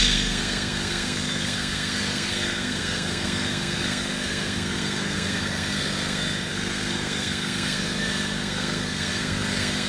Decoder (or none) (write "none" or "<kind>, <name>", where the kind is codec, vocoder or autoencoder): codec, SNAC